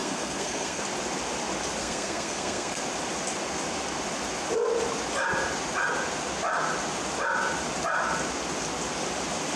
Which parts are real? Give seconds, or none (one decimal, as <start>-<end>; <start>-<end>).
0.8-1.8; 2.8-9.6